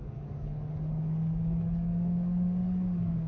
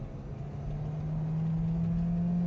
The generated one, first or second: first